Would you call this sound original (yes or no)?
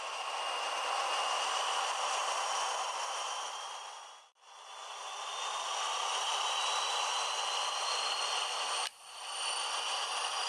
yes